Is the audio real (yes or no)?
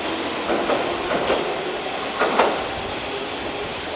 yes